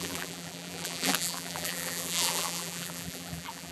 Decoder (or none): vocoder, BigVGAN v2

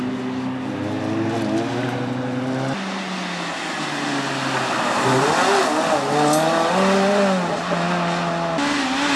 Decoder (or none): none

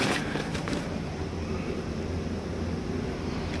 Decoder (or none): vocoder, BigVGAN v2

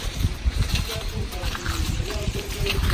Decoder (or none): vocoder, BigVGAN v2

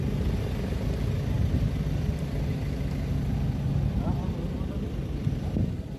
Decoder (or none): none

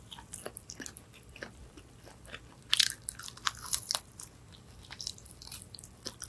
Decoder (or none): vocoder, BigVGAN v2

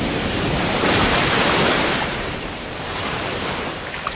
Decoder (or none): vocoder, BigVGAN v2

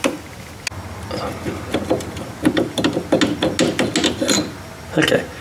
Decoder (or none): none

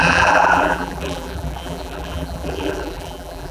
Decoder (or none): vocoder, BigVGAN v2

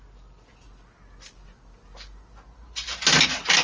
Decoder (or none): none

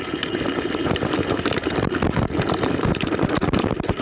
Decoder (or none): vocoder, BigVGAN v2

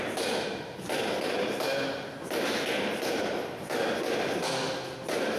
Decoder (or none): none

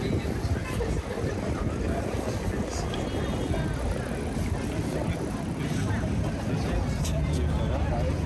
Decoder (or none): none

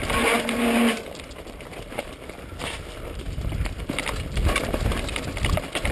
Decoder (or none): none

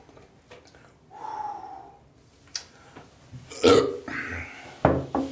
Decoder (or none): none